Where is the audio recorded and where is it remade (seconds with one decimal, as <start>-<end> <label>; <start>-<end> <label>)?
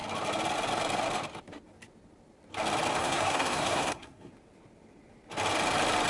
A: 0.0-3.0 recorded; 3.0-4.3 remade; 4.3-6.1 recorded